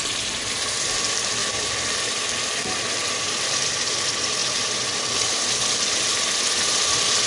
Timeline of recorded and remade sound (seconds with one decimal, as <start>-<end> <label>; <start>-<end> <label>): 0.0-7.3 recorded